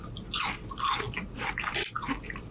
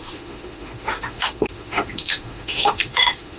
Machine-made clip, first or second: second